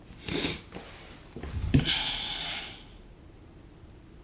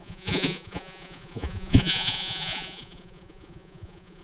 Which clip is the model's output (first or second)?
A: second